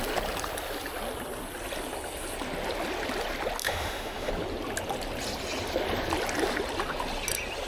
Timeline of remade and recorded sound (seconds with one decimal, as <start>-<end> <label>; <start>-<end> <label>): 0.0-3.6 recorded; 3.6-4.3 remade; 4.3-7.7 recorded